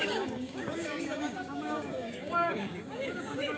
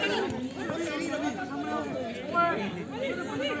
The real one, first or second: second